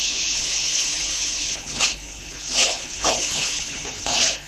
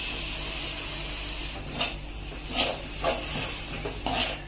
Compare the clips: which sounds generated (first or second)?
first